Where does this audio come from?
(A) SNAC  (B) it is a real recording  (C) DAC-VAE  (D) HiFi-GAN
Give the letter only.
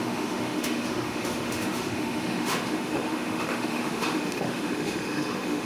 C